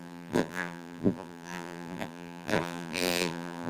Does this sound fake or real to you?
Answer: fake